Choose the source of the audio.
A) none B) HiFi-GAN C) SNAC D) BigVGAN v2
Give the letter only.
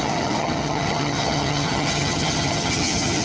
B